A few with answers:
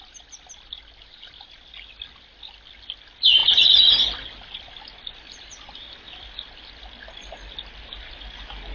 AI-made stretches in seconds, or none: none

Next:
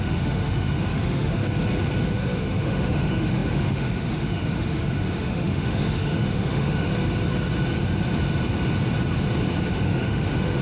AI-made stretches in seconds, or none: 0.0-1.4 (autoencoder, DAC-VAE); 2.0-6.9; 9.7-10.6

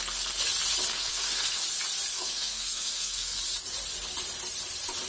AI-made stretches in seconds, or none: 0.9-1.6 (codec, SNAC); 2.1-3.4

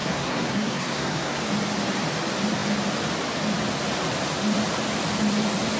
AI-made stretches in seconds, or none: 0.0-1.4 (codec, SNAC)

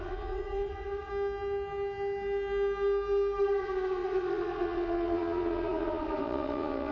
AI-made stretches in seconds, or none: 0.0-1.1 (vocoder, Vocos); 3.6-6.9

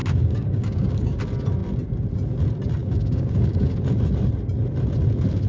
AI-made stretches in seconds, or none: 0.0-1.2 (codec, DAC); 2.8-3.7